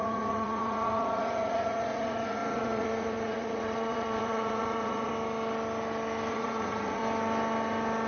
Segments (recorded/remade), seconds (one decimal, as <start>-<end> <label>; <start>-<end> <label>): 0.0-5.1 remade; 5.1-6.3 recorded; 6.3-7.0 remade; 7.0-8.1 recorded